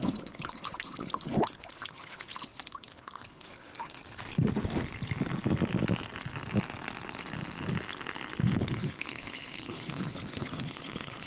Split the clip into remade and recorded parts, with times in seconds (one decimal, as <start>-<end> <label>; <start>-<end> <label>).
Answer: 0.0-4.0 remade; 4.0-8.7 recorded; 8.7-11.3 remade